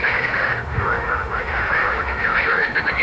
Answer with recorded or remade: remade